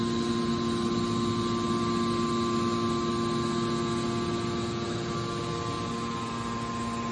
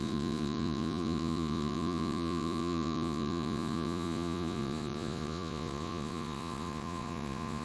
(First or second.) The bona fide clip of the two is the first